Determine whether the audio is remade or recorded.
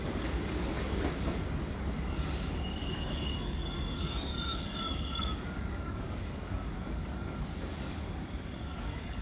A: remade